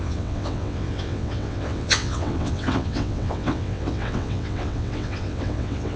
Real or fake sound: fake